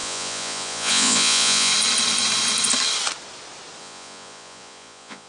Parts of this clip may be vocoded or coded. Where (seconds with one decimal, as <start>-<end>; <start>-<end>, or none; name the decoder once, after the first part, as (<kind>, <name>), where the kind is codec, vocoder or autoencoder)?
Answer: 0.0-1.7 (vocoder, Vocos); 3.8-5.3